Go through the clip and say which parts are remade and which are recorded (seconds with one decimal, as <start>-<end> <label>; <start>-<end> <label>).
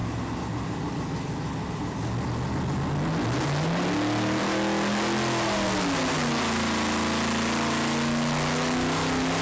0.0-9.4 recorded